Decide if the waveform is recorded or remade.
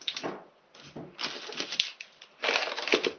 recorded